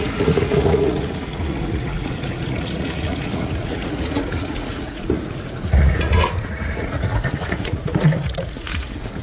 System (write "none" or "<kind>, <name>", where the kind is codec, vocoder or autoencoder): vocoder, Vocos